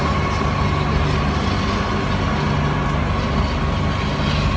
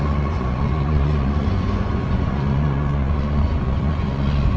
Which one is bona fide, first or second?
first